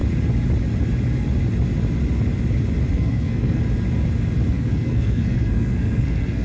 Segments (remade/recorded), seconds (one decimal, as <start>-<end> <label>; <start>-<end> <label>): 0.0-2.9 recorded; 2.9-3.6 remade; 3.6-4.5 recorded; 4.5-6.4 remade